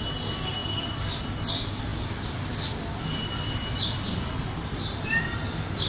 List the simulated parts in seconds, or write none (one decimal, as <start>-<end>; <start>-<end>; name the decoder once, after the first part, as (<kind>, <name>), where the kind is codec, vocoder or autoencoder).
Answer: 1.9-5.4 (vocoder, BigVGAN v2)